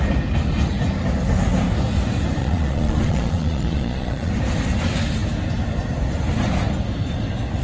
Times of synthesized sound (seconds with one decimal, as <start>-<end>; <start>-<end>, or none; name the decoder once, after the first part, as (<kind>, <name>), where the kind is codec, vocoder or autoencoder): 2.4-4.3 (vocoder, Vocos)